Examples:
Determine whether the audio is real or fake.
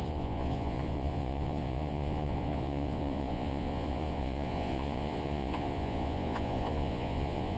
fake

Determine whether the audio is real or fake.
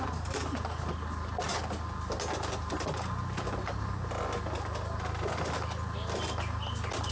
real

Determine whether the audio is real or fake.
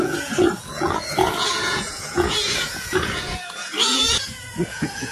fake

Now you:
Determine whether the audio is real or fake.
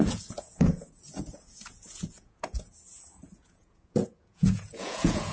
fake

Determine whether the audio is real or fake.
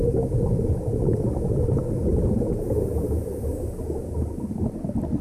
real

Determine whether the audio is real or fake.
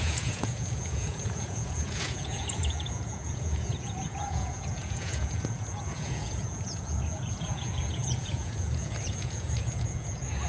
fake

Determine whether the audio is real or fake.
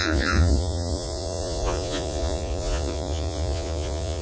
fake